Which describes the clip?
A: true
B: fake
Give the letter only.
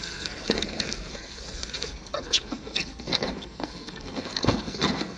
B